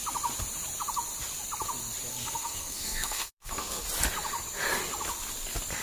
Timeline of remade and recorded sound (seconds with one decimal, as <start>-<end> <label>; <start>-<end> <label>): 0.0-2.1 recorded; 2.1-3.8 remade; 3.8-5.8 recorded